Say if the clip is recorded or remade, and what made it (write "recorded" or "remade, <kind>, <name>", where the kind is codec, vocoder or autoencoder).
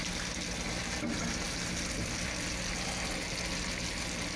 recorded